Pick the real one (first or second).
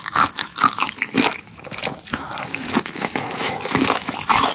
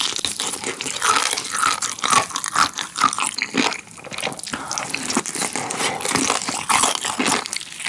second